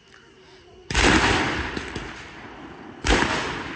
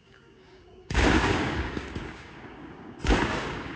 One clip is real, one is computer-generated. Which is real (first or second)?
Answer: first